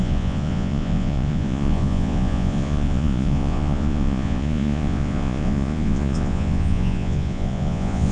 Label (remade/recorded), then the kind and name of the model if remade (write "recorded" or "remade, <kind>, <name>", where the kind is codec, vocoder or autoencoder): remade, vocoder, Vocos